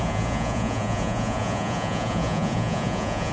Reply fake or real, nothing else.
fake